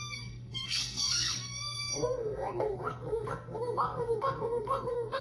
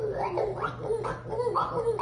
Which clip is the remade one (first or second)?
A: first